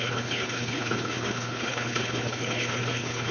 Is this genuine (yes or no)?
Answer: no